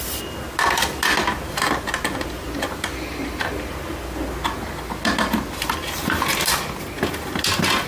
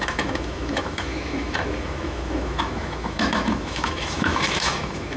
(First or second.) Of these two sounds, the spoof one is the second